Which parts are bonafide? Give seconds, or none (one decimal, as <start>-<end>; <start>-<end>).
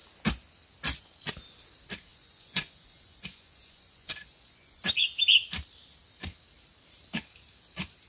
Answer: 0.0-2.1; 4.8-8.1